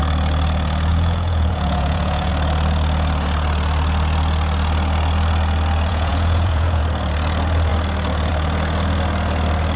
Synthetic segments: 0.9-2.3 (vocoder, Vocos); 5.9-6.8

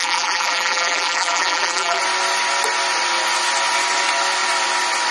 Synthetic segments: 0.0-2.0 (vocoder, BigVGAN v2)

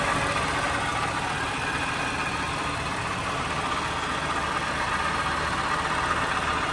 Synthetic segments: none

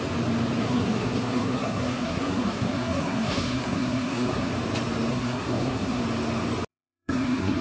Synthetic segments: 0.6-4.5 (codec, SNAC); 5.1-6.0; 6.7-7.6

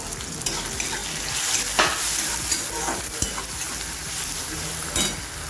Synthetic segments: none